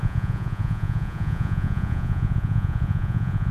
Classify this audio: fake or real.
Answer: fake